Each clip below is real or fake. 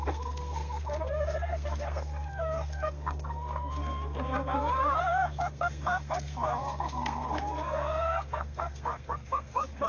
fake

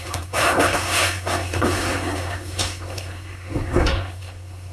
fake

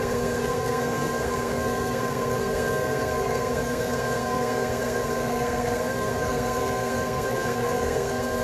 fake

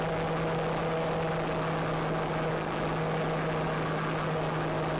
real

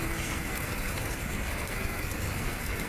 fake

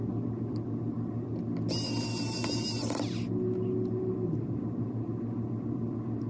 real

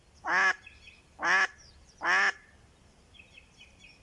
real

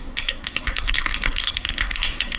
fake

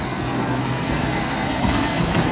fake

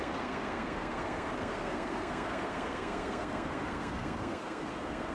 fake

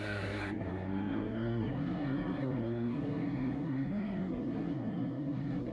fake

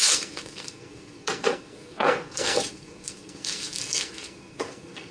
fake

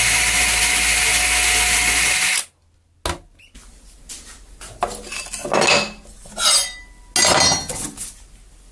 real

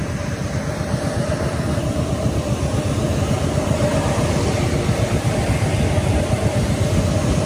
real